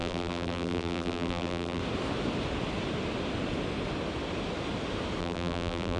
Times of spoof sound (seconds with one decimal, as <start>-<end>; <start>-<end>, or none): 0.0-1.8; 5.2-6.0